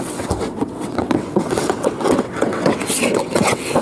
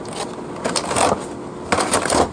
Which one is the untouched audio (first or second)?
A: second